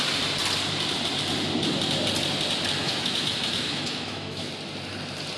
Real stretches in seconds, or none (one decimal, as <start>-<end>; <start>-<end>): 0.0-2.8; 4.5-5.4